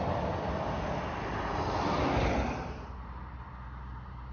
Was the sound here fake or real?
real